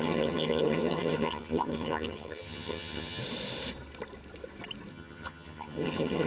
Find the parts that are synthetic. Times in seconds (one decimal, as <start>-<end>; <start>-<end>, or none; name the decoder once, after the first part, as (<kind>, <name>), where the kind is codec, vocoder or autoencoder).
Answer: 0.0-3.2 (vocoder, HiFi-GAN); 4.9-6.3